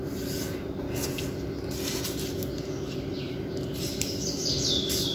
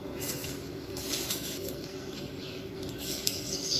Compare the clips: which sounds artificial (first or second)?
second